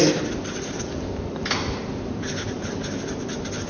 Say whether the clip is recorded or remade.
recorded